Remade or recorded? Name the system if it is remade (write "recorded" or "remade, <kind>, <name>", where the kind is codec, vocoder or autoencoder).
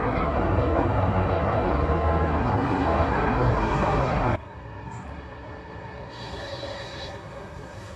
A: remade, codec, SNAC